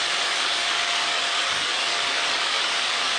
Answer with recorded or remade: remade